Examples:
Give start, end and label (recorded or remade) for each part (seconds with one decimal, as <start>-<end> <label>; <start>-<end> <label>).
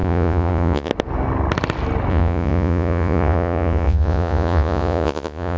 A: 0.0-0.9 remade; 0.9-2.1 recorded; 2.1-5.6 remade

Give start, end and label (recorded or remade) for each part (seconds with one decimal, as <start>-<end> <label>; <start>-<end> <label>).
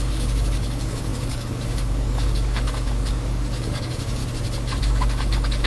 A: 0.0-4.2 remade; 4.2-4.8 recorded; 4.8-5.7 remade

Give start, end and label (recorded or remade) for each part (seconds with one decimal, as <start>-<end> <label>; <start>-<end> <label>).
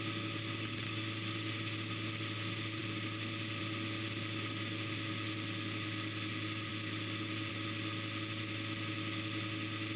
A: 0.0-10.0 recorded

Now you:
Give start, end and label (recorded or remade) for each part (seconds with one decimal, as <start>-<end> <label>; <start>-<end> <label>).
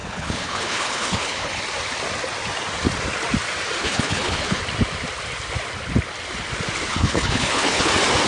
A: 0.0-1.6 remade; 1.6-3.8 recorded; 3.8-4.6 remade; 4.6-6.9 recorded; 6.9-7.9 remade; 7.9-8.3 recorded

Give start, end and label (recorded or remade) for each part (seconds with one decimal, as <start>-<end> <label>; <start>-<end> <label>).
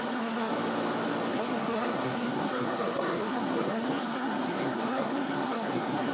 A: 0.0-0.5 remade; 0.5-1.3 recorded; 1.3-6.1 remade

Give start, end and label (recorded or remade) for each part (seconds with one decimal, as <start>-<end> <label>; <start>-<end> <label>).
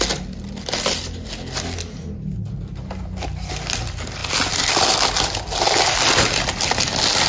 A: 0.0-7.3 recorded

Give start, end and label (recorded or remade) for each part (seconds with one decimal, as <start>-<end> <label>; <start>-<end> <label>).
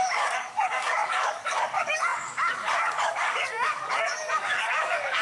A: 0.0-5.2 remade